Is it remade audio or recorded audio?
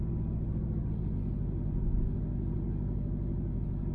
recorded